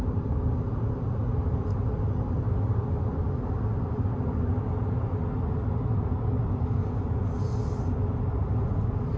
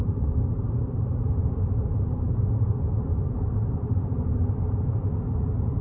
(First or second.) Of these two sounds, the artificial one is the second